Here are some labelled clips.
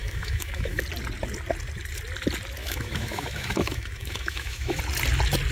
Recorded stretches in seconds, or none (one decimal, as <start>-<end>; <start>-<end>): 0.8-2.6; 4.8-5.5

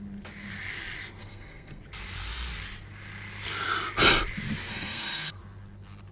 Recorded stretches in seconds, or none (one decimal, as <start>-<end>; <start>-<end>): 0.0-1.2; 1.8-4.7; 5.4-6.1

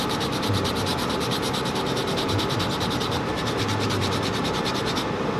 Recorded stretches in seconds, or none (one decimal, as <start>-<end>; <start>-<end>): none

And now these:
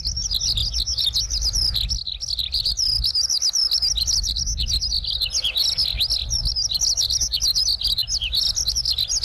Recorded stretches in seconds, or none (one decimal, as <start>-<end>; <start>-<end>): 0.0-9.2

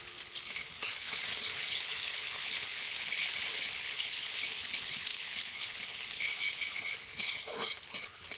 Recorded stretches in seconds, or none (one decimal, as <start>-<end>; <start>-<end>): none

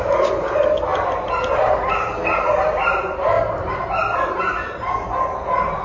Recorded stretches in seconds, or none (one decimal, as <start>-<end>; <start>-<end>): 0.0-5.8

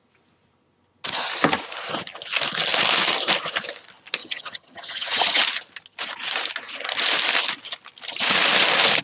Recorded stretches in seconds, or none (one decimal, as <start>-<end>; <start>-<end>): 0.0-4.2; 5.4-9.0